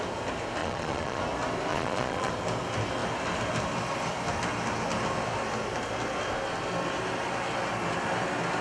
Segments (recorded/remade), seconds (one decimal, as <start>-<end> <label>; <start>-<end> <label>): 0.0-0.6 recorded; 0.6-1.2 remade; 1.2-1.7 recorded; 1.7-2.3 remade; 2.3-8.6 recorded